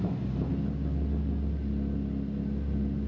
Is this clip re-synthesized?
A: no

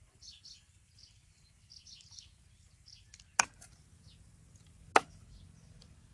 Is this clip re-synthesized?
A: no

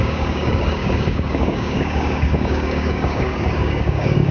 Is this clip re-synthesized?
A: yes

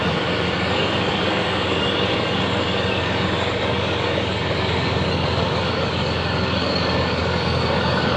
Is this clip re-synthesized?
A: yes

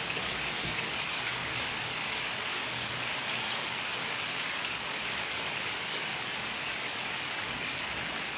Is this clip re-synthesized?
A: yes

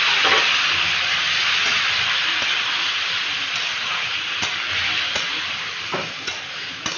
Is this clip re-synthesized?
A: no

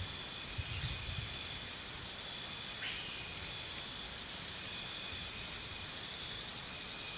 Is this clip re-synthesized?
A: no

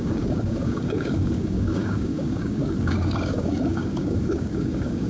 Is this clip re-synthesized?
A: yes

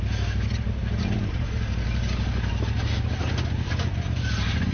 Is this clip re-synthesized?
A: no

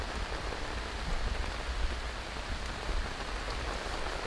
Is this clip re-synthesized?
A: no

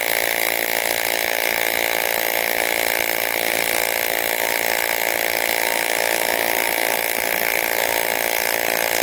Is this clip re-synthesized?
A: no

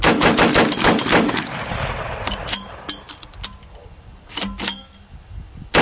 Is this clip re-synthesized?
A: no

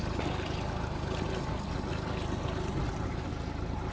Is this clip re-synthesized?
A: no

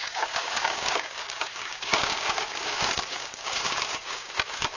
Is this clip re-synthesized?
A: yes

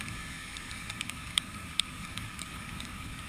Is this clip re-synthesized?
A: yes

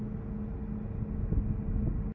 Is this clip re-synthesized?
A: no